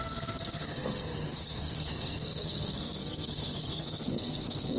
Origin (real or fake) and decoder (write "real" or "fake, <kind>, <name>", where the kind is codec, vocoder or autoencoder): fake, codec, SNAC